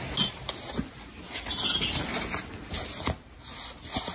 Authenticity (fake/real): real